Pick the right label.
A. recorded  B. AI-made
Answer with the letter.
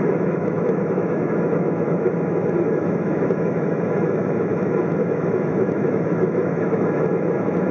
B